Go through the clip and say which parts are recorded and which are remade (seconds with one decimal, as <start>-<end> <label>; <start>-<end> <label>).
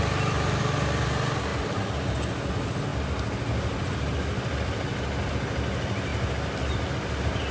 0.0-7.5 recorded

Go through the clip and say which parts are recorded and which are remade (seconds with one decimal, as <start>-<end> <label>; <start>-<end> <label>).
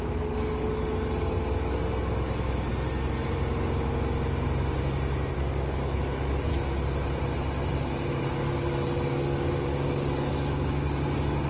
0.0-2.7 remade; 2.7-5.3 recorded; 5.3-6.5 remade; 6.5-8.1 recorded; 8.1-11.5 remade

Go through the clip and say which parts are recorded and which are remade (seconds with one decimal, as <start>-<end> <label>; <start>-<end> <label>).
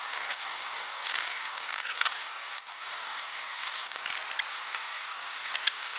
0.0-4.0 remade; 4.0-4.5 recorded; 4.5-6.0 remade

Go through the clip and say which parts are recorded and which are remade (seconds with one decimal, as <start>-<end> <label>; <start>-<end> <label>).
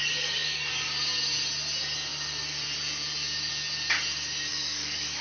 0.0-0.7 remade; 0.7-4.5 recorded; 4.5-5.2 remade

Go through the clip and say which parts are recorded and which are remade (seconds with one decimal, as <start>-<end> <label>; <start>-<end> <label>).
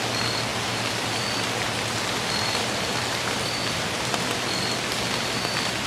0.0-5.9 recorded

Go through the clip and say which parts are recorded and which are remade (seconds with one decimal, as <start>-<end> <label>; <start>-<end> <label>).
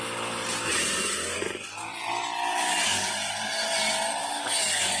0.0-2.5 recorded; 2.5-3.1 remade; 3.1-4.2 recorded; 4.2-5.0 remade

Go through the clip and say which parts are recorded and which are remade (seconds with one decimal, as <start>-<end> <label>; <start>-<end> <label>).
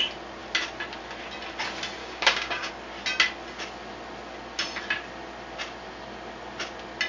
0.0-2.0 recorded; 2.0-2.7 remade; 2.7-7.1 recorded